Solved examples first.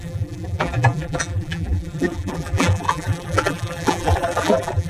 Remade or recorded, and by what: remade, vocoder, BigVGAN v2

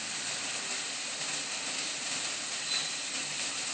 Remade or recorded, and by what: recorded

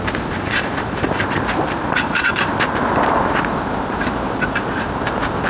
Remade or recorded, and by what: remade, vocoder, BigVGAN v2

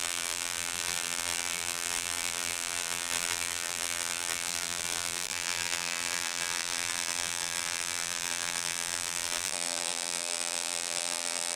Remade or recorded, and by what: remade, vocoder, BigVGAN v2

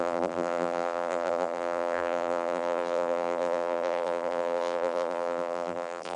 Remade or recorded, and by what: remade, vocoder, BigVGAN v2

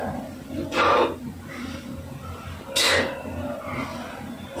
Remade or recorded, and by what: recorded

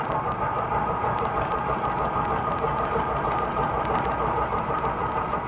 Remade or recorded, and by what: remade, vocoder, BigVGAN v2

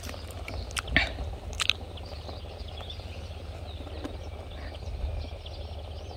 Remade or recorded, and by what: recorded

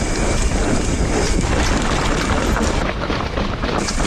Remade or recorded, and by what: recorded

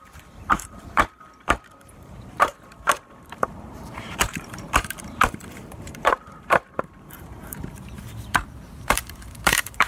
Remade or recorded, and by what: remade, vocoder, BigVGAN v2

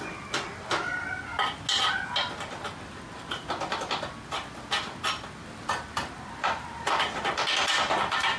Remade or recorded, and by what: recorded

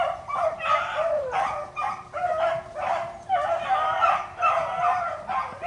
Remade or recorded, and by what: remade, vocoder, BigVGAN v2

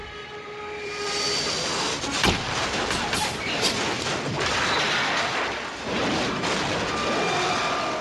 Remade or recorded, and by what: remade, vocoder, BigVGAN v2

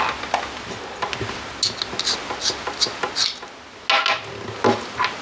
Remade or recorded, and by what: recorded